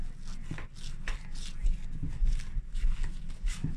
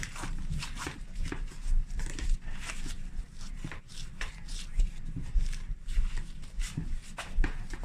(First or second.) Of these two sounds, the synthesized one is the second